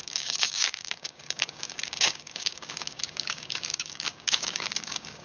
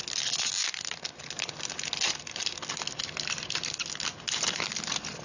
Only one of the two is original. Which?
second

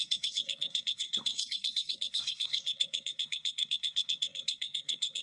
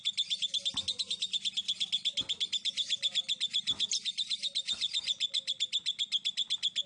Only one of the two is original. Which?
second